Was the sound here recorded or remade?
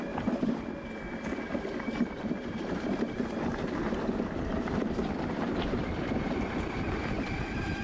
recorded